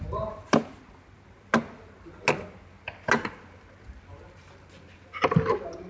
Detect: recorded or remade recorded